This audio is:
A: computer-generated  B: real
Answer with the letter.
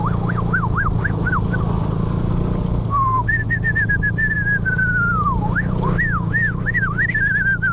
B